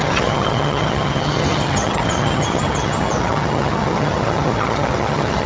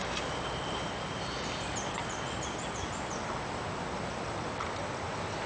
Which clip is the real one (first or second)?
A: second